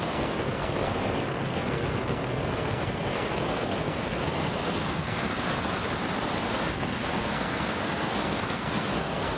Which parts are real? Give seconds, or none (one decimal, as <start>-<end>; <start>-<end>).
5.8-6.5